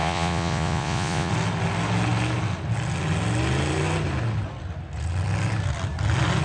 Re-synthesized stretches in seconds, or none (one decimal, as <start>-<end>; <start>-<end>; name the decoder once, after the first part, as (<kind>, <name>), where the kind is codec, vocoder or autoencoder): 0.0-1.3 (vocoder, Vocos)